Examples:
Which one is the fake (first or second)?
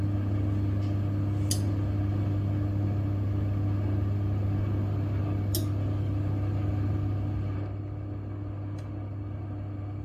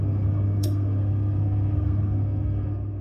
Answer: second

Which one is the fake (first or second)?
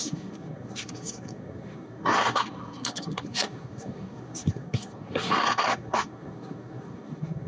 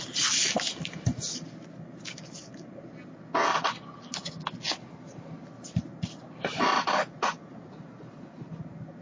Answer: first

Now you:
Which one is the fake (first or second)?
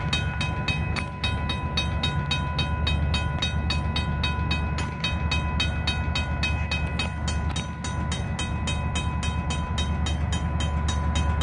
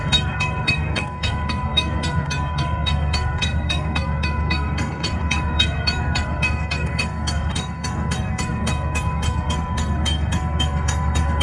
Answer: second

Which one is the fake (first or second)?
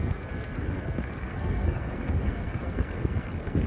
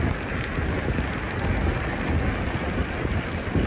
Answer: first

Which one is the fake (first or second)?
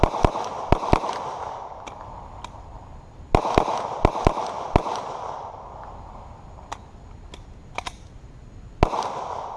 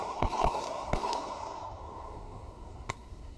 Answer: second